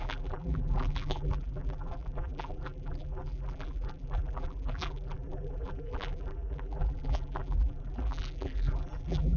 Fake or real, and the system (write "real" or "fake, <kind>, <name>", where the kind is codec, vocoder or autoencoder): fake, vocoder, BigVGAN v2